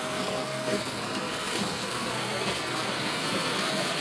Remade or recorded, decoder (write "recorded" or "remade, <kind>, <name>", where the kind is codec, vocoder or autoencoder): remade, codec, SNAC